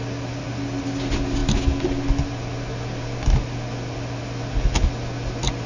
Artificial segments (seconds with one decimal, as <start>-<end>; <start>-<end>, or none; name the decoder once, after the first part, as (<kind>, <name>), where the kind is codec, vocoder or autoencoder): none